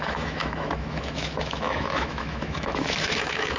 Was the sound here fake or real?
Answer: fake